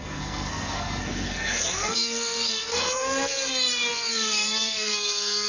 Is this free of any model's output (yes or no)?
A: no